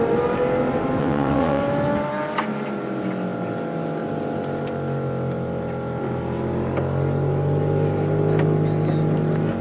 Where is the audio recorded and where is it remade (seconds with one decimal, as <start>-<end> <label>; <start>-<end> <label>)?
0.0-1.0 recorded; 1.0-1.6 remade; 1.6-9.6 recorded

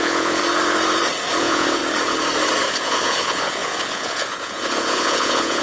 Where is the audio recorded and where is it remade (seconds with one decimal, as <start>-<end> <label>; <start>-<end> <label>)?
0.0-0.4 remade; 0.4-1.4 recorded; 1.4-1.8 remade; 1.8-2.7 recorded; 2.7-5.6 remade